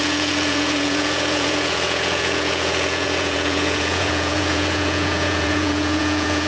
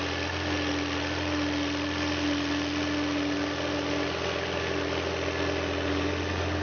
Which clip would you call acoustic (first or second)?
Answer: second